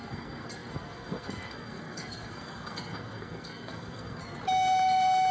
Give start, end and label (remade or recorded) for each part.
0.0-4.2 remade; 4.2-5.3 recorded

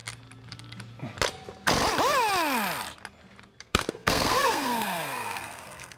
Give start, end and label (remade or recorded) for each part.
0.0-3.6 recorded; 3.6-6.0 remade

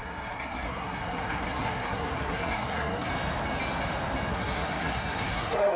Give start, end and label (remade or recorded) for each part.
0.0-3.1 remade; 3.1-4.3 recorded; 4.3-5.8 remade

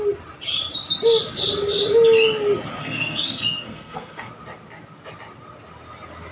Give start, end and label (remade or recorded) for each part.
0.0-2.8 recorded; 2.8-4.3 remade; 4.3-6.3 recorded